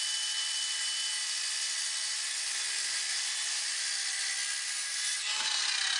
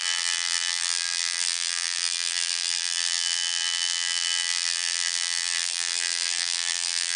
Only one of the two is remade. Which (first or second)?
second